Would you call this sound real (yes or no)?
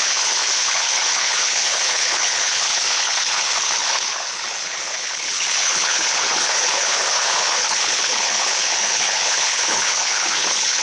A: no